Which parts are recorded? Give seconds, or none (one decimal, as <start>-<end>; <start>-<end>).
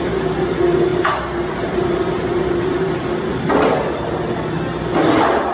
0.0-0.9; 2.0-3.3; 4.1-5.5